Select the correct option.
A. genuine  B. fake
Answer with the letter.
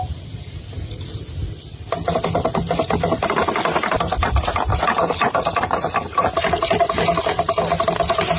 A